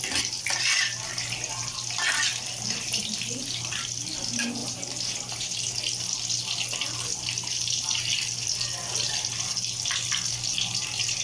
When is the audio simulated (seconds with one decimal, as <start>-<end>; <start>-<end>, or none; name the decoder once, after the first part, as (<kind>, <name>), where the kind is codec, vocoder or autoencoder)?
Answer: 4.6-5.8 (vocoder, BigVGAN v2)